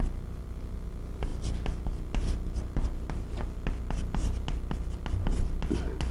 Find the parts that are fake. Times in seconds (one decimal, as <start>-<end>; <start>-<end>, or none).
none